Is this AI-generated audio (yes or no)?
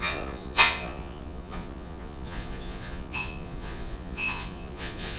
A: yes